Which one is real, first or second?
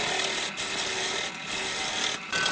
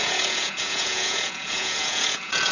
first